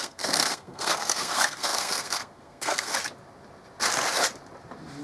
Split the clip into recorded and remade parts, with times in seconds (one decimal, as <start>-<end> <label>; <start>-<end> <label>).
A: 0.0-2.9 remade; 2.9-5.0 recorded